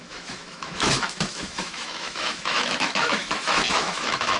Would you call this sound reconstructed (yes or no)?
yes